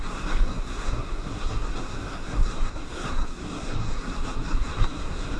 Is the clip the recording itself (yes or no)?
no